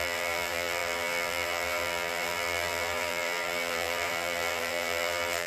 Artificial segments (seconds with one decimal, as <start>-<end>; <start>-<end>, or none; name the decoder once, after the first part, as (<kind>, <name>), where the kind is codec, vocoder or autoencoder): 0.0-5.5 (vocoder, BigVGAN v2)

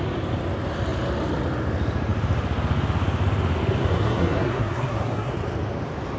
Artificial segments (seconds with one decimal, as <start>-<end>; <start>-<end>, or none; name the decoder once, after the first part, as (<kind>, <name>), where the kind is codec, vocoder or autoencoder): 3.8-5.3 (codec, SNAC)

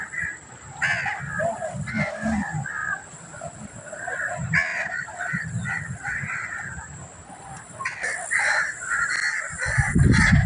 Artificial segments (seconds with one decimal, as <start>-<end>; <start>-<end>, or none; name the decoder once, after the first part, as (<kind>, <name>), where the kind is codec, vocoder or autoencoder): 4.7-7.8 (vocoder, BigVGAN v2)